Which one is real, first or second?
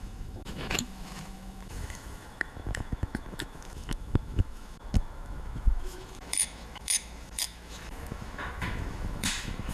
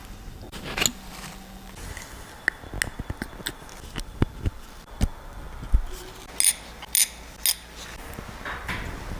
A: second